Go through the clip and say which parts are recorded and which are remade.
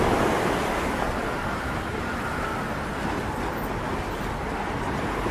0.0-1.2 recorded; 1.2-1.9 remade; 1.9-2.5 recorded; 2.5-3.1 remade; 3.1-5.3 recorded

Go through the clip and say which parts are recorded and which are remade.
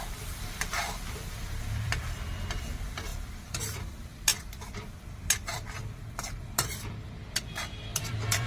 0.0-8.5 remade